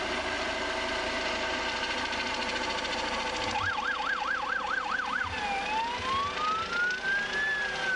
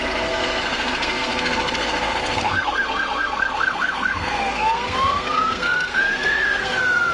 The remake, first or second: second